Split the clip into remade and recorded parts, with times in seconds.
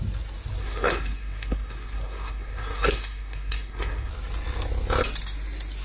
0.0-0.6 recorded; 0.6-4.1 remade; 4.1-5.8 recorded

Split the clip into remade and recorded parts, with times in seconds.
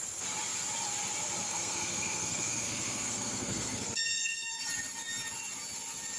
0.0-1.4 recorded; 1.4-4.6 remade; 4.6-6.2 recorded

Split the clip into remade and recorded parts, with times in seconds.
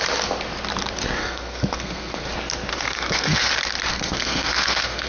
0.0-1.2 recorded; 1.2-2.3 remade; 2.3-2.7 recorded; 2.7-3.5 remade; 3.5-3.9 recorded; 3.9-5.1 remade